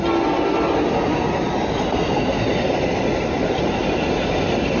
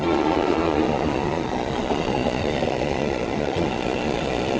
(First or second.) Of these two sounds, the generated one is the second